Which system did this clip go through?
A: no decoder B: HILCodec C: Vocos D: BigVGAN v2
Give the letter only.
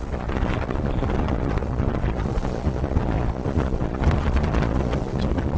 C